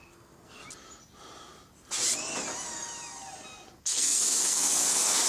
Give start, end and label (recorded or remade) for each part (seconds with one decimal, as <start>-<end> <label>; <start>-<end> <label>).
0.0-0.6 remade; 0.6-3.8 recorded; 3.8-5.3 remade